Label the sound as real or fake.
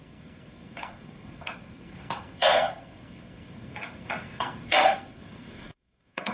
fake